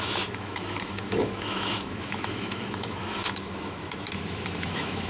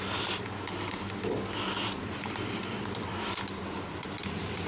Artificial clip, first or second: first